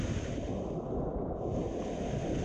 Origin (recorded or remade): recorded